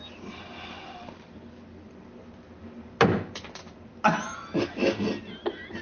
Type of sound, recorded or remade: recorded